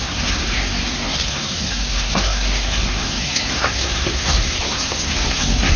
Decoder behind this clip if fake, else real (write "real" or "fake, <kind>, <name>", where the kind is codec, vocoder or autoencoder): fake, codec, SNAC